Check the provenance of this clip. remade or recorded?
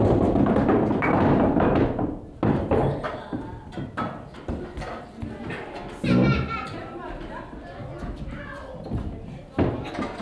recorded